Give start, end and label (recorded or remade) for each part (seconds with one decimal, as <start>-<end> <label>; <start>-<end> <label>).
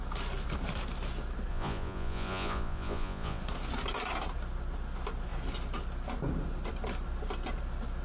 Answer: 0.0-1.5 recorded; 1.5-3.4 remade; 3.4-8.0 recorded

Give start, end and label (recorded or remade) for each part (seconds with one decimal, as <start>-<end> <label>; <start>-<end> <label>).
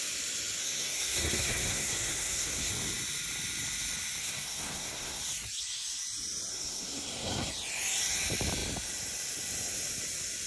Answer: 0.0-0.6 recorded; 0.6-2.7 remade; 2.7-4.2 recorded; 4.2-5.2 remade; 5.2-6.5 recorded; 6.5-7.5 remade; 7.5-10.5 recorded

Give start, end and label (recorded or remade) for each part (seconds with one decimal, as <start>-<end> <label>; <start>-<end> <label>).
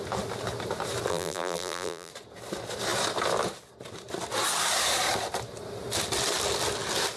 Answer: 0.0-1.1 recorded; 1.1-2.1 remade; 2.1-7.2 recorded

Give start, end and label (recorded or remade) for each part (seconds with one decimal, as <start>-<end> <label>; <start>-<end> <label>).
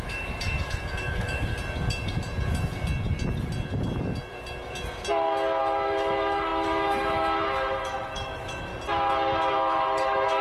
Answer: 0.0-1.5 remade; 1.5-5.6 recorded; 5.6-8.7 remade; 8.7-9.5 recorded; 9.5-10.4 remade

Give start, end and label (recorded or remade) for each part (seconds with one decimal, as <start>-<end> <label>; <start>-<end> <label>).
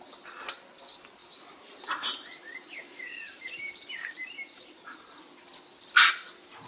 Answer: 0.0-1.2 recorded; 1.2-5.2 remade; 5.2-6.7 recorded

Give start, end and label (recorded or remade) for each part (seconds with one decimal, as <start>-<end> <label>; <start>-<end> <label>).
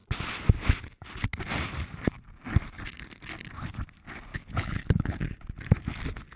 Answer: 0.0-4.3 recorded; 4.3-5.2 remade; 5.2-6.4 recorded